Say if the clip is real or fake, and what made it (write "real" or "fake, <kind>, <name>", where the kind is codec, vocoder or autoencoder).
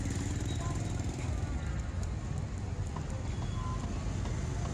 real